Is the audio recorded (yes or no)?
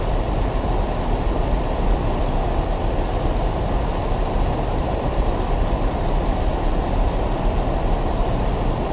yes